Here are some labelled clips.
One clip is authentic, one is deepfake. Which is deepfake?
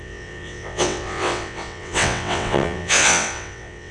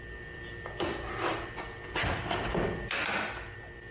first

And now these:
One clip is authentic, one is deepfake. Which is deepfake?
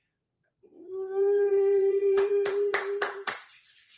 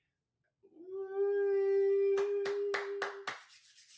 first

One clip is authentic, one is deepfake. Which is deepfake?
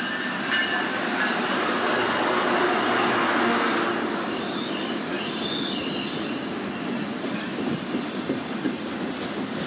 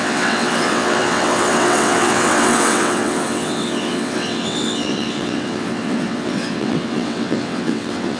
second